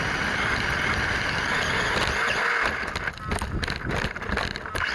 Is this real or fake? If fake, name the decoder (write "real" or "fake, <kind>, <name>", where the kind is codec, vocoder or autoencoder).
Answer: real